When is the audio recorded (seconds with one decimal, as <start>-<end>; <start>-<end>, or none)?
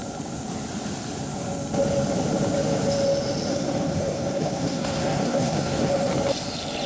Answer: 0.0-3.5; 6.1-6.9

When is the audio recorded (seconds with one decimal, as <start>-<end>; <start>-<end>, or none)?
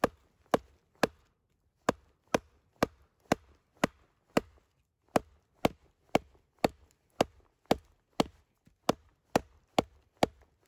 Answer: 0.0-10.7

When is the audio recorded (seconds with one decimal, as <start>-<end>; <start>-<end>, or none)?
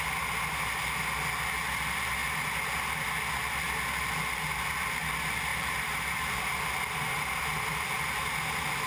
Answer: 0.0-5.5; 6.4-8.9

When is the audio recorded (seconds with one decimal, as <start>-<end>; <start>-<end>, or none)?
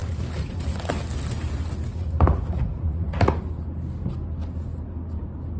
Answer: 0.9-1.9; 3.4-5.6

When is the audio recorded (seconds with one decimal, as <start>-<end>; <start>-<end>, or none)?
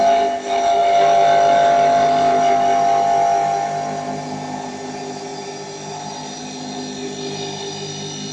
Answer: 0.0-8.3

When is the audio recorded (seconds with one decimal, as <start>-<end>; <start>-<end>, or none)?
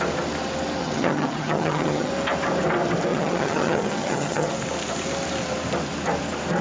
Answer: 0.0-0.8; 2.1-3.1; 4.5-6.6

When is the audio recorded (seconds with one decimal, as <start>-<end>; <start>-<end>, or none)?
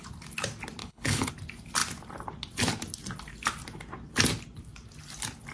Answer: 0.0-0.8; 1.3-5.5